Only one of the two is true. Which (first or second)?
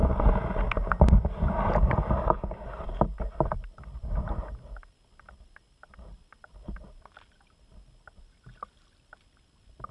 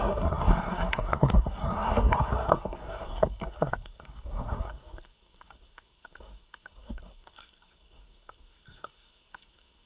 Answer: first